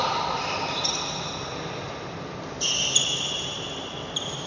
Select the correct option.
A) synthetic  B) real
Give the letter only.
B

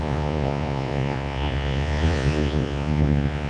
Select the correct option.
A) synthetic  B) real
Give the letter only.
A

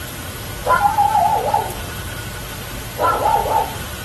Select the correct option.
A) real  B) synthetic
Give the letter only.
A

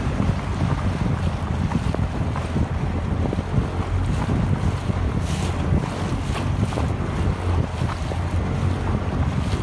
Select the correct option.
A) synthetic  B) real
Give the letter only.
B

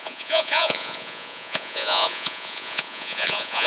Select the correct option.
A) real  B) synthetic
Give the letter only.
B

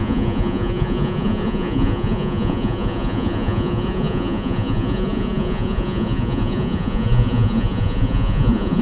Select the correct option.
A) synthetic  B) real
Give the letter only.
A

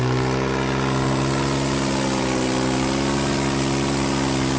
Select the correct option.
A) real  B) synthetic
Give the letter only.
A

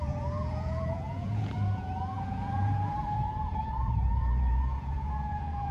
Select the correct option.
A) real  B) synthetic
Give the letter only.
B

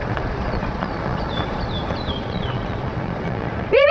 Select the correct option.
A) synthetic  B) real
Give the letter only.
A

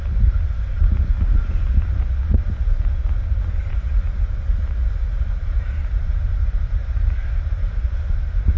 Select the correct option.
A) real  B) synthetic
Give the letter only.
A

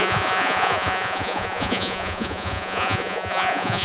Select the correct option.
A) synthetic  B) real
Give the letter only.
A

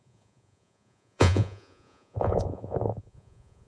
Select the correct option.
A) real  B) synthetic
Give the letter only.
B